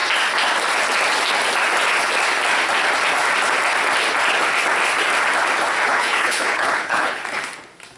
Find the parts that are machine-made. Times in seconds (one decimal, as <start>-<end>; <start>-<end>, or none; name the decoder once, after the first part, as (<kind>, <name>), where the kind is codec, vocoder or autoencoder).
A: 5.8-7.2 (codec, HILCodec)